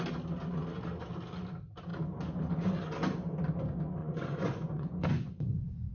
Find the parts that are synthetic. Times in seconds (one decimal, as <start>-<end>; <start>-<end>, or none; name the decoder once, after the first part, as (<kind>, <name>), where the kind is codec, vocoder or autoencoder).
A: 4.0-5.9 (vocoder, Vocos)